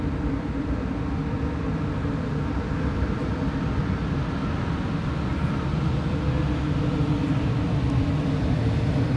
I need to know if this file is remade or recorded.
recorded